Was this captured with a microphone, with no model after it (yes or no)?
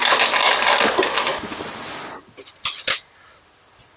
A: yes